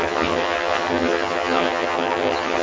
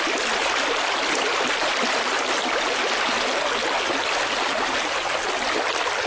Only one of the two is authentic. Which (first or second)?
second